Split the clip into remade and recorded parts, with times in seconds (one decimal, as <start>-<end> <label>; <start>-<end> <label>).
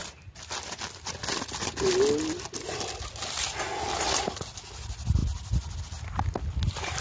0.0-7.0 recorded